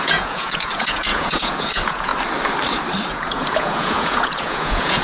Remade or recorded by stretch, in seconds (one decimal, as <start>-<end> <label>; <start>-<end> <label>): 0.0-2.1 remade; 2.1-3.1 recorded; 3.1-5.0 remade